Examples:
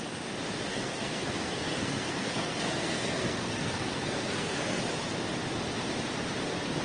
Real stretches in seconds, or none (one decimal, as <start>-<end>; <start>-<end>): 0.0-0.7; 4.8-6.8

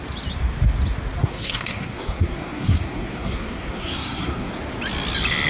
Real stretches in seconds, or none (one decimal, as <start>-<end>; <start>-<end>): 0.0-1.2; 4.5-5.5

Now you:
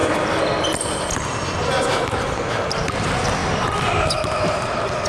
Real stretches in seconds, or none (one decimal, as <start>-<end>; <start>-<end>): 0.0-5.1